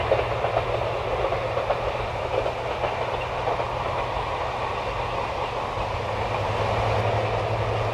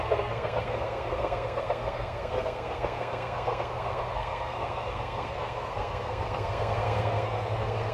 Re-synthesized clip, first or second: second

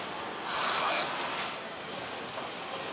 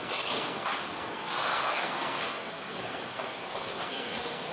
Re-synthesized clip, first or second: second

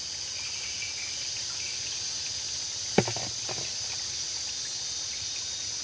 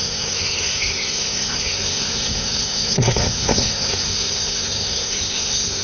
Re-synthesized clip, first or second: second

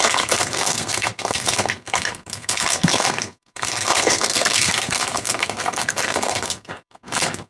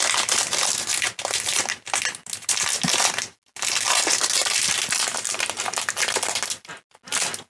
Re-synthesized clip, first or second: first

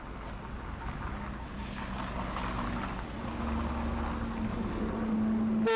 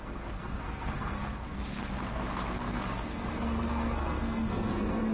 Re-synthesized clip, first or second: second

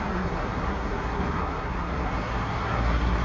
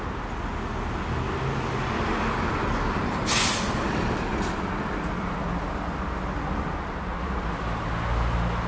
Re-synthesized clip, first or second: first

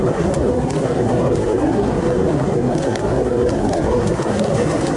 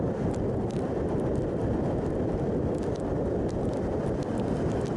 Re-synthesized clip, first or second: first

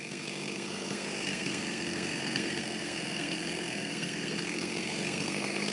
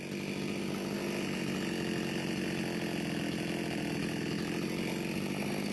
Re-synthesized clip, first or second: first